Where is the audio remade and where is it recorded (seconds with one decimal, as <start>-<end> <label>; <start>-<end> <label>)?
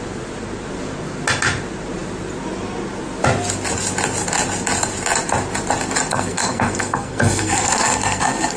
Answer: 0.0-6.1 recorded; 6.1-8.6 remade